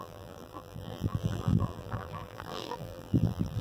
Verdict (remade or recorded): remade